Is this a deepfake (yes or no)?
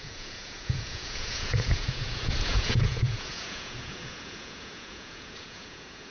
yes